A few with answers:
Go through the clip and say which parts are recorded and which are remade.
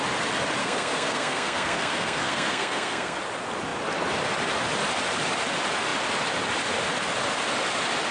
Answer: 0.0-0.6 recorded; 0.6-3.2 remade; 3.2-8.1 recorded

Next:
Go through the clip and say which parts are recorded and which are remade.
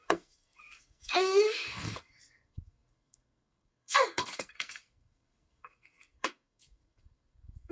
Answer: 0.0-7.7 remade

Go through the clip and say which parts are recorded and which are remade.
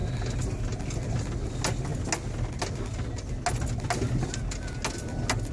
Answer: 0.0-5.5 recorded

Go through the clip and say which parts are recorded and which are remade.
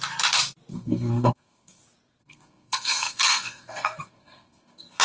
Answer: 0.0-0.7 recorded; 0.7-1.8 remade; 1.8-2.2 recorded; 2.2-5.0 remade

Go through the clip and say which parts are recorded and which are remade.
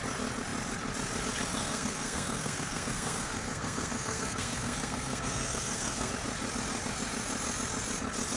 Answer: 0.0-1.6 recorded; 1.6-6.1 remade; 6.1-8.4 recorded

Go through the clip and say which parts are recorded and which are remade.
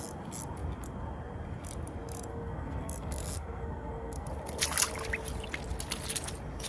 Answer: 0.0-2.3 recorded; 2.3-4.3 remade; 4.3-6.7 recorded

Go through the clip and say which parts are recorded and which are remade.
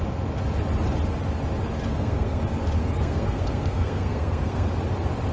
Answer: 0.0-1.9 recorded; 1.9-2.4 remade; 2.4-2.8 recorded; 2.8-4.7 remade; 4.7-5.3 recorded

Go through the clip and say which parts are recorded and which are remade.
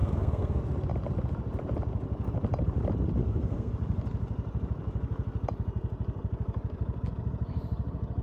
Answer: 0.0-0.6 remade; 0.6-3.2 recorded; 3.2-3.7 remade; 3.7-8.2 recorded